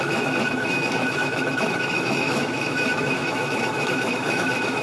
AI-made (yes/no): yes